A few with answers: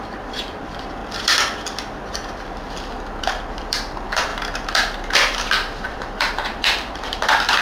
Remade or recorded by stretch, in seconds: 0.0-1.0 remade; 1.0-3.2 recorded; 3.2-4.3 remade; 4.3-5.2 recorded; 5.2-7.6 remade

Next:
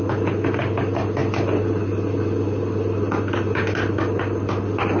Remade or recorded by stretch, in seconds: 0.0-5.0 recorded

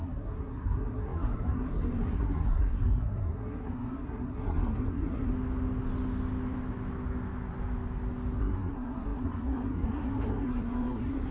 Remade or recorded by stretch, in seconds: 0.0-5.3 remade; 5.3-8.4 recorded; 8.4-11.3 remade

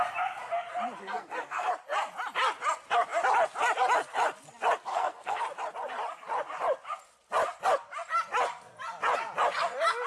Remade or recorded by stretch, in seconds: 0.0-1.0 recorded; 1.0-1.7 remade; 1.7-4.9 recorded; 4.9-5.4 remade; 5.4-10.1 recorded

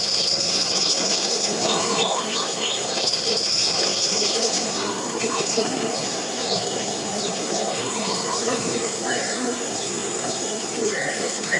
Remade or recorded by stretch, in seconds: 0.0-11.6 remade

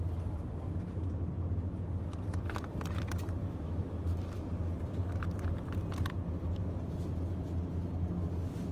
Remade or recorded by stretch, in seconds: 0.0-3.4 recorded; 3.4-4.4 remade; 4.4-8.7 recorded

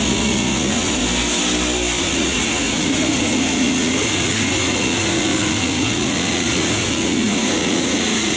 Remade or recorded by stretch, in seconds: 0.0-1.0 remade; 1.0-2.0 recorded; 2.0-8.4 remade